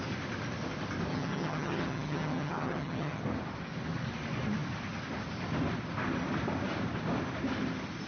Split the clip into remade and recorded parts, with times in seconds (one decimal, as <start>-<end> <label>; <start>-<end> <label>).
0.0-1.1 recorded; 1.1-3.2 remade; 3.2-8.1 recorded